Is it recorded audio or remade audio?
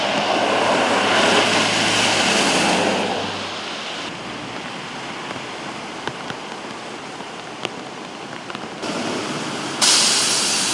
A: recorded